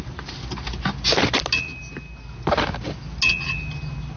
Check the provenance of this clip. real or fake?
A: real